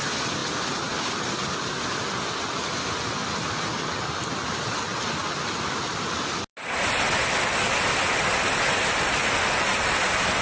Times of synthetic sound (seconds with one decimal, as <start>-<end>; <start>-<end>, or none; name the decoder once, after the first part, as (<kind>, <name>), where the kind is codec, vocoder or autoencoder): none

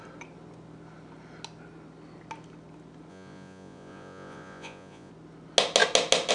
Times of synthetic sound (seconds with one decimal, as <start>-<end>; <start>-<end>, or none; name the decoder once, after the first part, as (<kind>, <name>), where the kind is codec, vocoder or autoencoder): 3.1-5.1 (vocoder, Vocos)